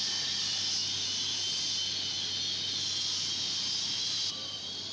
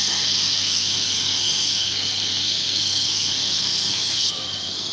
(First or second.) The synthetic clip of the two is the second